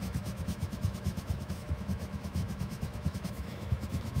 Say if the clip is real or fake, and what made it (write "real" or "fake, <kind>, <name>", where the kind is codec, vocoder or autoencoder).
fake, autoencoder, DAC-VAE